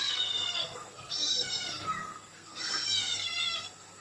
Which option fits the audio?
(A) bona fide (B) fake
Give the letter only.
B